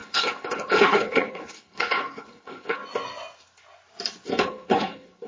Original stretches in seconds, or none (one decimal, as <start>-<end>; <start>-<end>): 2.8-4.4